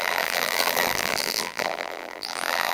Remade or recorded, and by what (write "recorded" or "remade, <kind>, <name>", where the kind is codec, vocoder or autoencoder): remade, vocoder, BigVGAN v2